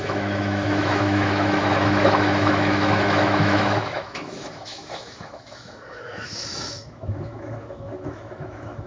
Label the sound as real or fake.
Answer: fake